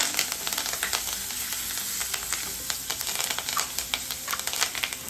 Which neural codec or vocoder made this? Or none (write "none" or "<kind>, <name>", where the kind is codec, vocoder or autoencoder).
none